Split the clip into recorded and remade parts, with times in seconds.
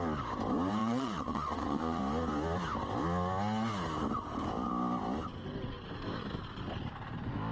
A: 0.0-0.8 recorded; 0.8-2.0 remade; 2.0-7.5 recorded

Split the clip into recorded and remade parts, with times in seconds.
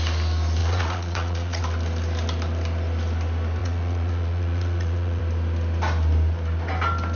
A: 0.0-0.6 recorded; 0.6-1.6 remade; 1.6-3.6 recorded; 3.6-5.2 remade; 5.2-7.2 recorded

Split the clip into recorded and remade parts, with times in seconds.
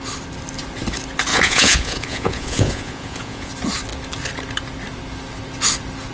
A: 0.0-1.3 recorded; 1.3-3.5 remade; 3.5-6.1 recorded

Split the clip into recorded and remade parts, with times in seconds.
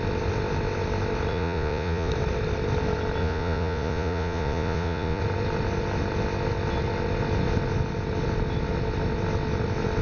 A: 0.0-1.3 recorded; 1.3-2.1 remade; 2.1-3.2 recorded; 3.2-5.2 remade; 5.2-10.0 recorded